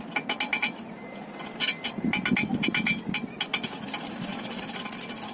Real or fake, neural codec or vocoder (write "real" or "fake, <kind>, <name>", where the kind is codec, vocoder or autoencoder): real